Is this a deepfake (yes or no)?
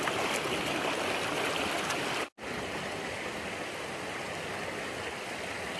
no